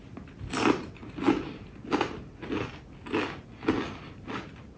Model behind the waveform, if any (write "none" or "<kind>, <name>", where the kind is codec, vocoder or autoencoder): none